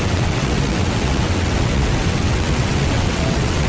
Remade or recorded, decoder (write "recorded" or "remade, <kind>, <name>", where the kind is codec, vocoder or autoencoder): remade, vocoder, WaveNeXt